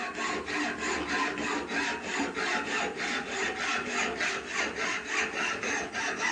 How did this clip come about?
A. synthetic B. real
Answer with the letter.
B